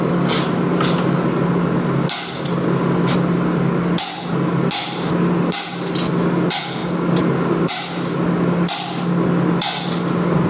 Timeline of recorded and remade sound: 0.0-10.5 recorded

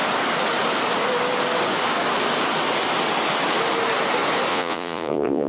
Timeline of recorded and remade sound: 0.0-4.5 recorded; 4.5-5.5 remade

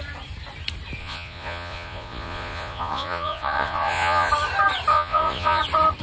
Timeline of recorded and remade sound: 0.0-1.0 recorded; 1.0-4.3 remade; 4.3-4.9 recorded; 4.9-5.6 remade; 5.6-6.0 recorded